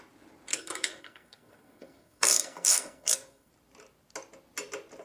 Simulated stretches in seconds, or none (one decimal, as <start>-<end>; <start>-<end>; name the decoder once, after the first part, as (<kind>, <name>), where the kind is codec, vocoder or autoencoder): 0.5-3.5 (codec, SNAC)